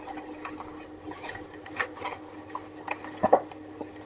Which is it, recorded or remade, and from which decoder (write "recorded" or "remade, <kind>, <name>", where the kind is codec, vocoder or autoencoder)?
recorded